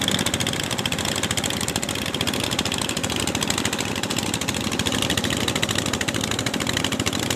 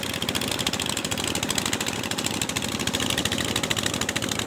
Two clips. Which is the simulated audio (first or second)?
first